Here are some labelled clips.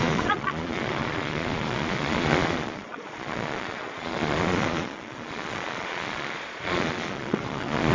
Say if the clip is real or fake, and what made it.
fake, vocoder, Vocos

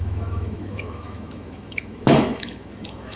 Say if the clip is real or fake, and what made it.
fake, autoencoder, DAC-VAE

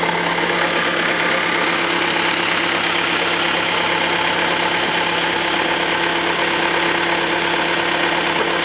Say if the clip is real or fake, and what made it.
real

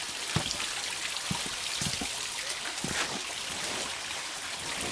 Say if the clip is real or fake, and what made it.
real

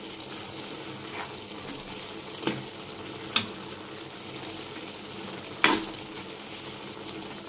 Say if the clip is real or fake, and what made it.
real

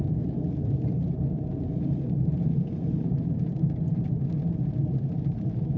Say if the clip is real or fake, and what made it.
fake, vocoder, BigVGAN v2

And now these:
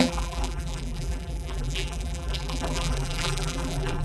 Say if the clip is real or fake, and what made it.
fake, vocoder, BigVGAN v2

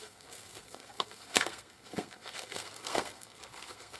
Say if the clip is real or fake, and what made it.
fake, codec, SNAC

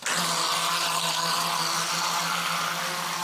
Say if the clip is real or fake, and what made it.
real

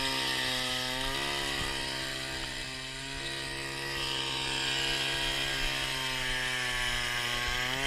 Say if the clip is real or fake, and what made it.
real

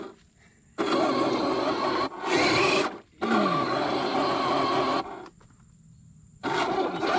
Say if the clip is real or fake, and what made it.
real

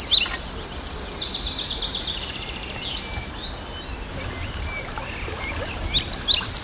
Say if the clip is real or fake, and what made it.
real